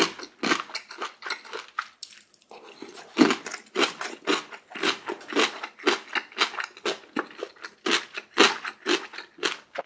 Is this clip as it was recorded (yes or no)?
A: yes